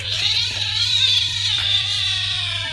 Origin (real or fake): fake